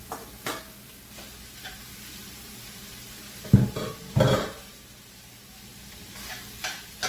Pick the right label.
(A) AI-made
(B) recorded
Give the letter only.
A